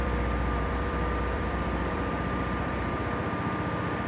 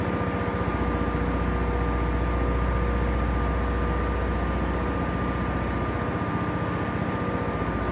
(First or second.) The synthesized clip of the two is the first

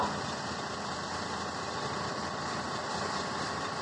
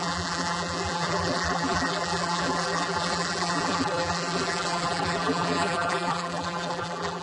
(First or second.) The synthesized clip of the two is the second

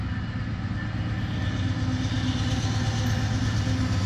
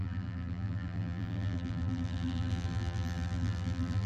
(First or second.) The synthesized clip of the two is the second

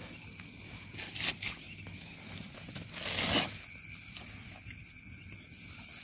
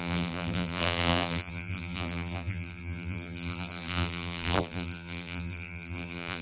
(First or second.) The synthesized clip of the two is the second